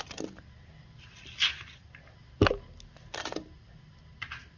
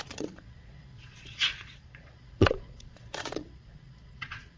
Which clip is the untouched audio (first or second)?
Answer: first